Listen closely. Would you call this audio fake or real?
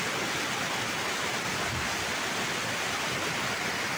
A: real